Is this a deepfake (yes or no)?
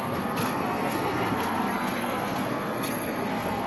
yes